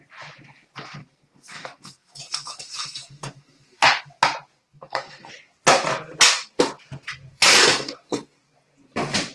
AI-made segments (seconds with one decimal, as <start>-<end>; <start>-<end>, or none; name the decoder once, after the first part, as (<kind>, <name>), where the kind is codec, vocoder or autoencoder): 1.0-4.0 (codec, SNAC); 4.6-5.3; 7.3-8.4